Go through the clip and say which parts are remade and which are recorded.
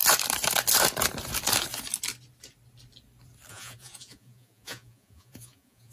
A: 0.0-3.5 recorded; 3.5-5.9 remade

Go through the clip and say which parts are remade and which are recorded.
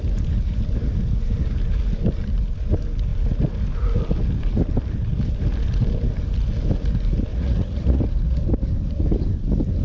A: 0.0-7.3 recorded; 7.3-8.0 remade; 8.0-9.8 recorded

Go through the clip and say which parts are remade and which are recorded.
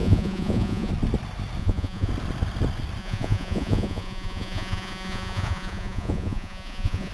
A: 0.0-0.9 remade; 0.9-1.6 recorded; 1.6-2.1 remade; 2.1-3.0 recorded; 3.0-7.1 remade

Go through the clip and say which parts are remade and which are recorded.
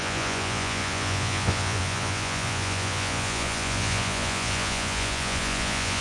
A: 0.0-6.0 remade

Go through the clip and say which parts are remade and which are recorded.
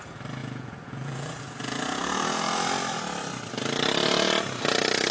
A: 0.0-0.4 recorded; 0.4-2.0 remade; 2.0-5.1 recorded